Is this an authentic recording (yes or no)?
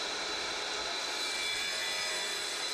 yes